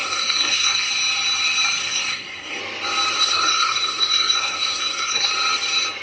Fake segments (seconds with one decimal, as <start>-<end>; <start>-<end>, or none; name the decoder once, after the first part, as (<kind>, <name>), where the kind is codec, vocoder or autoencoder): 0.0-0.9 (codec, SNAC); 1.8-2.6; 3.2-5.3